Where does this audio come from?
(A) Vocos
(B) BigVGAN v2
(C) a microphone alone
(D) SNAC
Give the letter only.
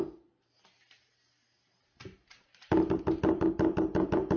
C